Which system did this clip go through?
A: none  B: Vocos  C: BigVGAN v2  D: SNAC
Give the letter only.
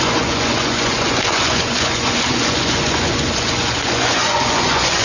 B